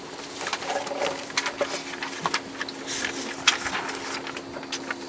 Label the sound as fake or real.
real